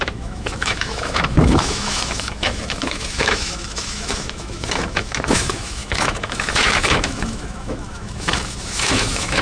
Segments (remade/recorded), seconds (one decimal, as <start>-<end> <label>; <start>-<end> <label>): 0.0-9.4 remade